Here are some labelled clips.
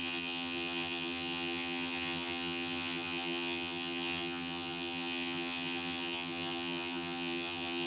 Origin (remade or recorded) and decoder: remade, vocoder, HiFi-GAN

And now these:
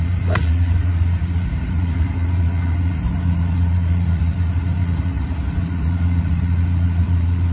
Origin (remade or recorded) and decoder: remade, vocoder, Vocos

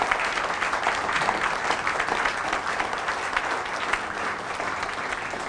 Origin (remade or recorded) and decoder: recorded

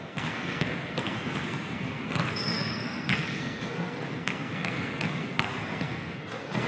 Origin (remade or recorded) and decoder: remade, codec, SNAC